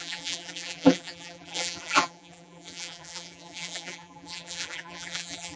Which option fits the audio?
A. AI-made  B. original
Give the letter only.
A